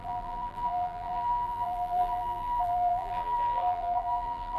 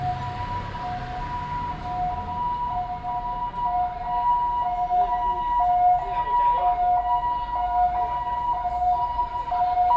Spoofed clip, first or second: first